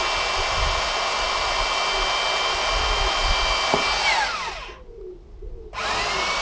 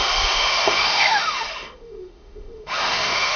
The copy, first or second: second